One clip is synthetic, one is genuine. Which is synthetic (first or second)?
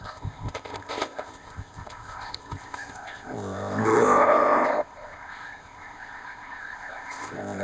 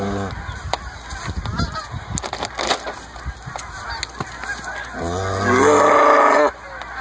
first